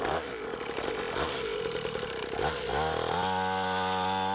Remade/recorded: recorded